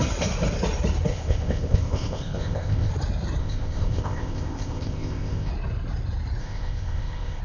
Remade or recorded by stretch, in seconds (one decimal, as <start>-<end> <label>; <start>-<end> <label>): 0.0-1.1 recorded; 1.1-2.9 remade; 2.9-3.4 recorded; 3.4-5.5 remade; 5.5-6.4 recorded; 6.4-7.4 remade